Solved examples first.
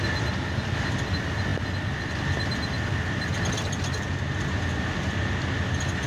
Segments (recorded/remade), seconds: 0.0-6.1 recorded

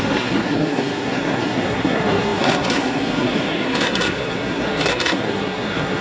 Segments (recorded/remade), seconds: 0.0-6.0 remade

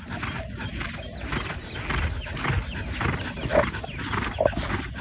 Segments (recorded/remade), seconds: 0.0-5.0 recorded

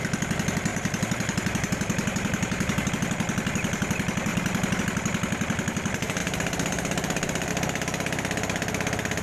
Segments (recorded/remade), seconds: 0.0-0.7 recorded; 0.7-2.9 remade; 2.9-4.3 recorded; 4.3-4.8 remade; 4.8-6.2 recorded; 6.2-7.5 remade; 7.5-9.2 recorded